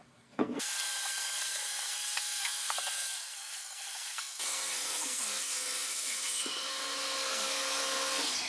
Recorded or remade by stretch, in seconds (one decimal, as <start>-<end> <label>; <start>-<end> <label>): 0.0-8.5 remade